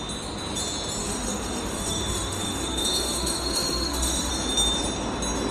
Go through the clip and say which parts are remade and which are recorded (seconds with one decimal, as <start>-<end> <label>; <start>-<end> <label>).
0.0-1.0 recorded; 1.0-4.3 remade; 4.3-5.5 recorded